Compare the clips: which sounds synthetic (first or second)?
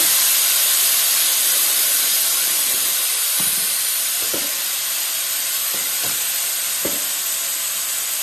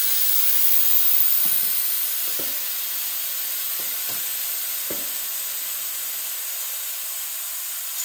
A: first